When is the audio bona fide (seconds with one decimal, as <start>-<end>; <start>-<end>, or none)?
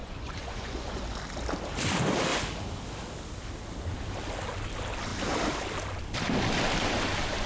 1.0-7.5